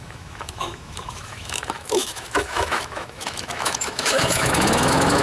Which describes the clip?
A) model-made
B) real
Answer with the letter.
A